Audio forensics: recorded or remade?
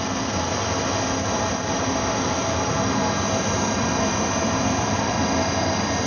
recorded